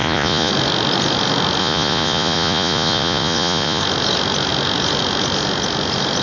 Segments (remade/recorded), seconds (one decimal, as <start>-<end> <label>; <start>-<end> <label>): 0.0-0.5 remade; 0.5-1.6 recorded; 1.6-3.8 remade; 3.8-6.2 recorded